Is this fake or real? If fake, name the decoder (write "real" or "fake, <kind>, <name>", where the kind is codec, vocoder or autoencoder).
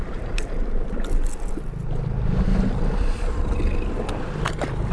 real